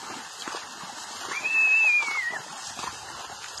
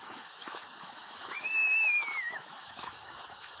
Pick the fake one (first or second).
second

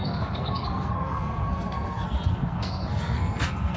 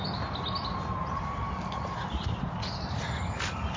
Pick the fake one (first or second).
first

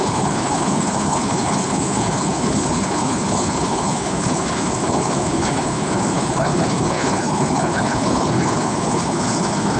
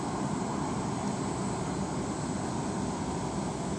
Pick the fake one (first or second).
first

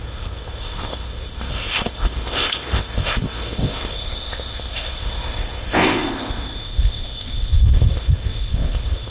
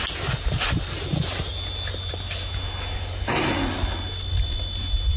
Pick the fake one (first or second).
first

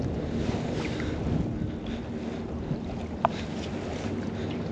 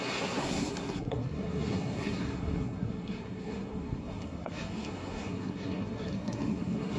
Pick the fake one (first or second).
second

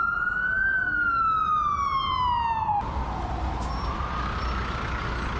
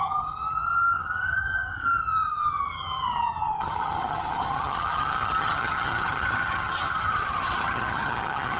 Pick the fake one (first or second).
second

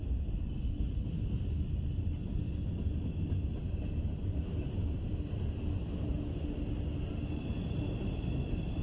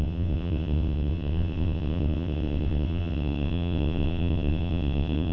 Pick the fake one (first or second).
second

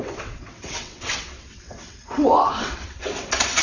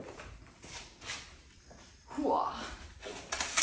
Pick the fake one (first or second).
first